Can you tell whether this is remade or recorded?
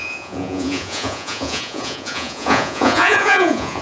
remade